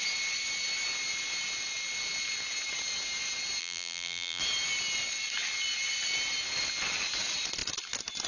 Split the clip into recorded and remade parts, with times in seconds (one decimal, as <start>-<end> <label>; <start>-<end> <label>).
0.0-3.6 recorded; 3.6-4.4 remade; 4.4-8.3 recorded